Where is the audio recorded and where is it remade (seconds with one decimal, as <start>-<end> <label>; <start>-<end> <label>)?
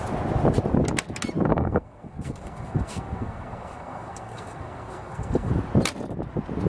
0.0-1.5 recorded; 1.5-5.5 remade; 5.5-6.7 recorded